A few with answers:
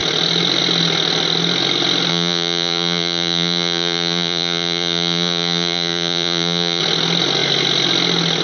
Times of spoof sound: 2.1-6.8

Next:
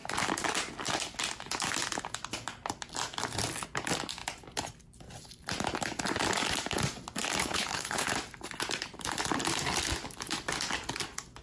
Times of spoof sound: 7.4-8.1

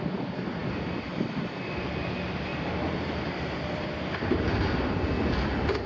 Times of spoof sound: 0.6-2.1; 2.5-3.9; 4.5-5.0

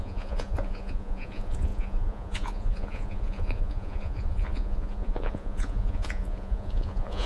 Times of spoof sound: 0.0-7.3

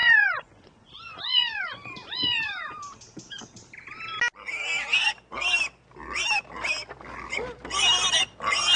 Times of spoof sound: 0.0-2.8

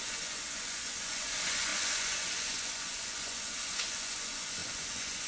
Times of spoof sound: 0.0-5.3

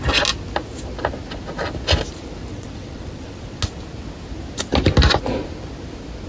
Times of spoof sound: 2.5-3.6